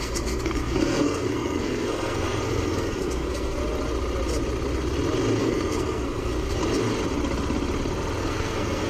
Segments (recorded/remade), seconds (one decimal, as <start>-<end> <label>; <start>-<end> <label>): 0.0-3.6 remade; 3.6-5.4 recorded; 5.4-6.6 remade; 6.6-8.2 recorded; 8.2-8.9 remade